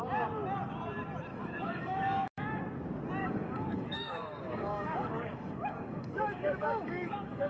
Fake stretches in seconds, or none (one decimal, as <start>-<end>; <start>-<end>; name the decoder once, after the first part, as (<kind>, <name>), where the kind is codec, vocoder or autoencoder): 1.3-2.6 (codec, DAC); 3.2-7.5